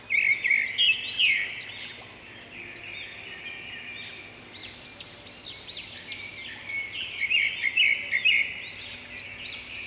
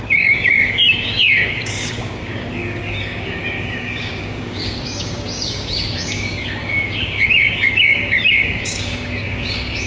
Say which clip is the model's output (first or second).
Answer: second